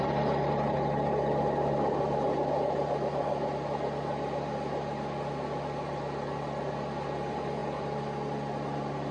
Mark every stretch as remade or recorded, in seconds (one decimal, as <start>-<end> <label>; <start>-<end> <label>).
0.0-9.1 recorded